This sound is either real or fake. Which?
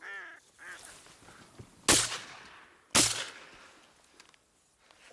real